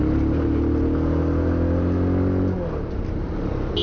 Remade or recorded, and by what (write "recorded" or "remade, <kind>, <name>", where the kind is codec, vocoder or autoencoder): recorded